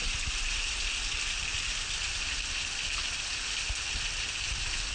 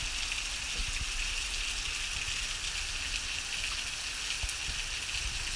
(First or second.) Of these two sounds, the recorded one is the second